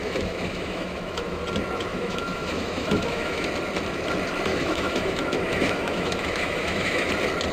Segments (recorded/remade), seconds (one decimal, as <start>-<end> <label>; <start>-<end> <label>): 0.0-1.4 remade; 1.4-1.9 recorded; 1.9-3.5 remade; 3.5-4.5 recorded; 4.5-7.1 remade; 7.1-7.5 recorded